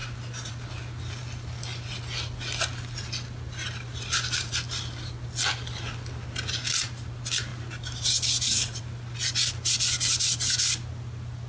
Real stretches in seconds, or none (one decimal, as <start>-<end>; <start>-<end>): 0.0-11.5